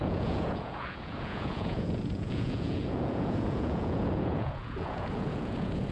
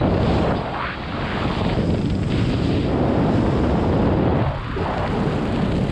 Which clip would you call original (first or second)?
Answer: second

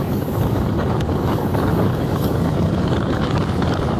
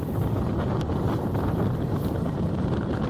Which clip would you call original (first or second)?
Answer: second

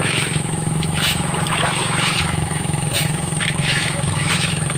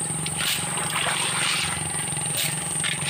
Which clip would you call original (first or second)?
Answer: second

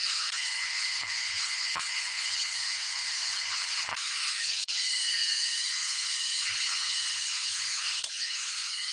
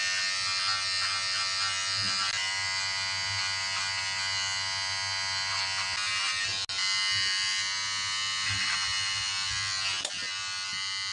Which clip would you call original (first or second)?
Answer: second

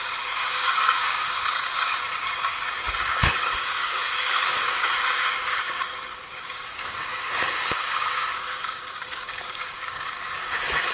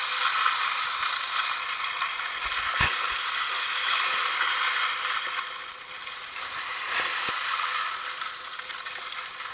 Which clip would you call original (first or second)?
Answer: second